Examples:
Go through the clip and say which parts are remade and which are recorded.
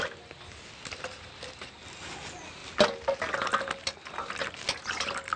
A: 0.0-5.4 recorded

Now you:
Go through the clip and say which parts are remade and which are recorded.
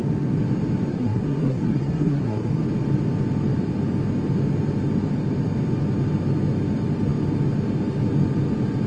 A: 0.0-0.9 recorded; 0.9-2.6 remade; 2.6-8.9 recorded